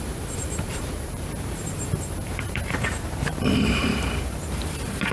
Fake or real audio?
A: fake